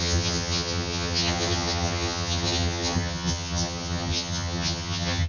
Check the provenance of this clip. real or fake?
fake